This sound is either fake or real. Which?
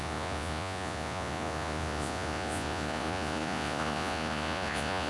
fake